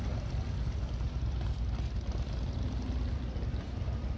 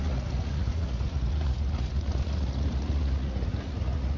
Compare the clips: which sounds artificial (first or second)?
second